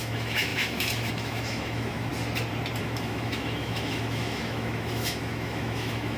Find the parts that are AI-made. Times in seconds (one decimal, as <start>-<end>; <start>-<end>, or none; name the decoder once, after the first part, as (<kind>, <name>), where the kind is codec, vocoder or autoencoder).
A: 0.0-2.1 (autoencoder, DAC-VAE); 2.8-6.2